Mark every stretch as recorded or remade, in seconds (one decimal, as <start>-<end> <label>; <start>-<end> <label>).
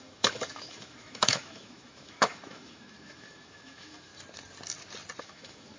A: 0.0-4.1 remade; 4.1-5.2 recorded; 5.2-5.8 remade